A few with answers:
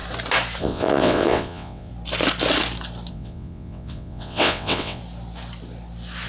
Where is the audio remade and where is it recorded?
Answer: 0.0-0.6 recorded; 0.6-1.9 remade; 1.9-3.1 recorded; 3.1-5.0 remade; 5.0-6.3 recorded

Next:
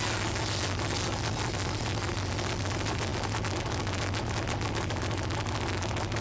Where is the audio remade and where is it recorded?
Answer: 0.0-6.2 recorded